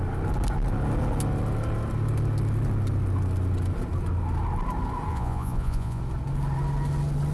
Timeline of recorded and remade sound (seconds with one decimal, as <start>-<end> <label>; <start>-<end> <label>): 0.0-5.1 recorded; 5.1-6.0 remade; 6.0-7.3 recorded